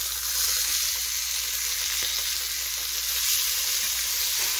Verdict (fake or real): real